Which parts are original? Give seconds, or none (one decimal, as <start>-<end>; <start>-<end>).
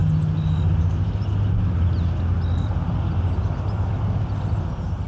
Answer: 0.0-5.1